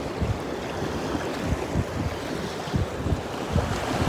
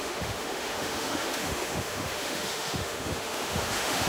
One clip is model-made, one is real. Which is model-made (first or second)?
second